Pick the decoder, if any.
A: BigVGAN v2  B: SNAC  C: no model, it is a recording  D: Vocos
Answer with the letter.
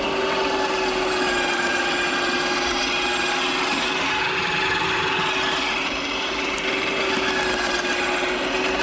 C